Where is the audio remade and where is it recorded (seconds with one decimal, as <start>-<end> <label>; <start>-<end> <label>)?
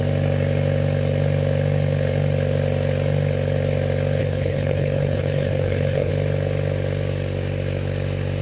0.0-4.2 recorded; 4.2-6.1 remade; 6.1-8.4 recorded